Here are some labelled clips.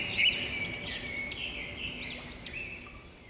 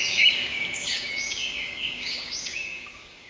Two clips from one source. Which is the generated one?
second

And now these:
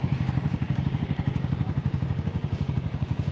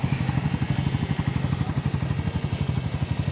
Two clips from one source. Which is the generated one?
first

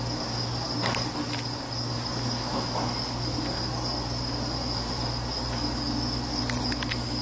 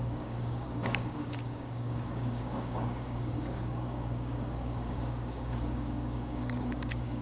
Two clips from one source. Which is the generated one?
second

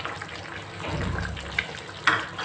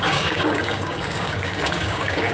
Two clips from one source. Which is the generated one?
second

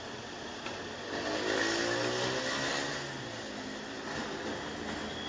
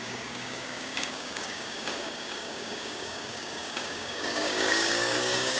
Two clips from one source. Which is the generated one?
second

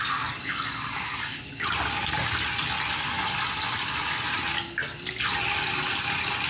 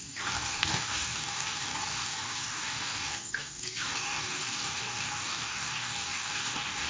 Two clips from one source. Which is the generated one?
second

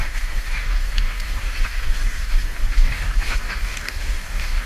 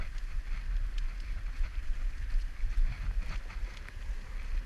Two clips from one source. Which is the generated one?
first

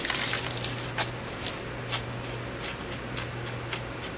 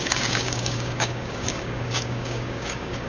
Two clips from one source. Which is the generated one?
second